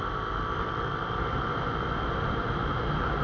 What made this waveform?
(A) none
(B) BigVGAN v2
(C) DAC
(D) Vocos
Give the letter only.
A